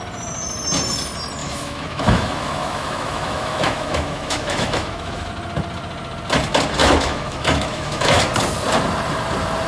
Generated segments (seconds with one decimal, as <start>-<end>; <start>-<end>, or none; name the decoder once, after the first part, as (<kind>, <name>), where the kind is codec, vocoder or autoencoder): 1.4-5.3 (autoencoder, DAC-VAE); 6.8-8.2